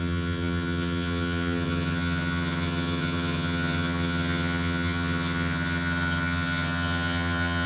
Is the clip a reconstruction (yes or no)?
yes